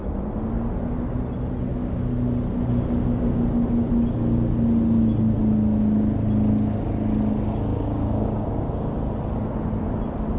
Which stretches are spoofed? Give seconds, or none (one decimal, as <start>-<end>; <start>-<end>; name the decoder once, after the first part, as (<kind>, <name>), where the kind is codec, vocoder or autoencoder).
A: 1.7-3.9 (codec, DAC); 7.7-9.0